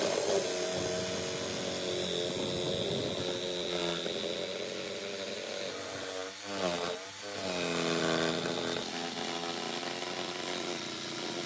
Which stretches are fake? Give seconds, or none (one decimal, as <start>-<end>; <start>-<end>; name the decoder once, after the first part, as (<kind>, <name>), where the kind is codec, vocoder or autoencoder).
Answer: none